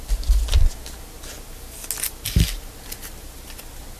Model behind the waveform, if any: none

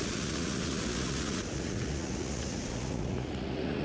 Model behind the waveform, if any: vocoder, Vocos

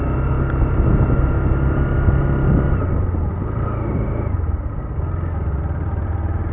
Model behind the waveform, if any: none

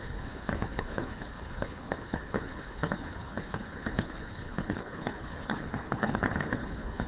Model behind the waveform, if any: codec, HILCodec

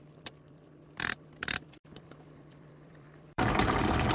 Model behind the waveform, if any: vocoder, BigVGAN v2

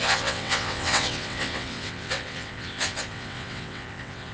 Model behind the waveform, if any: vocoder, WaveNeXt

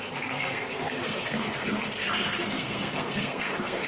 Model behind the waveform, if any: codec, SNAC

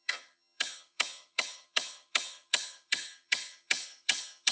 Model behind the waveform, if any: vocoder, HiFi-GAN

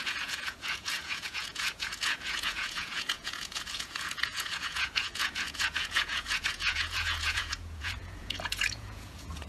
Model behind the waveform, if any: vocoder, Vocos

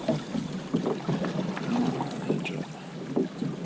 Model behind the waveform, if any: none